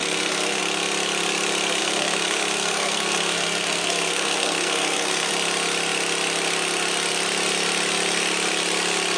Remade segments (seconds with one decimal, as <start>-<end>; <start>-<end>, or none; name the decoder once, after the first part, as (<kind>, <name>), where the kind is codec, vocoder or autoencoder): 0.0-0.6 (codec, SNAC); 1.8-5.3